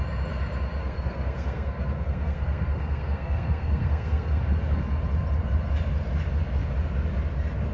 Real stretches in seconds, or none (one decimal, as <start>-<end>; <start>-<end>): 0.0-0.8; 4.4-7.7